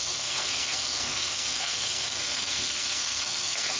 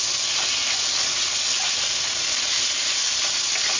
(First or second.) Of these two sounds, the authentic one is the second